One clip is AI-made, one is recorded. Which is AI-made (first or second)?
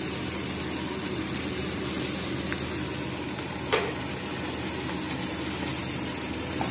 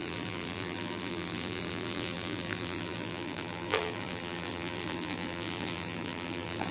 second